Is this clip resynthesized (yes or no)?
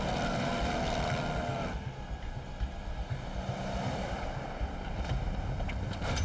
no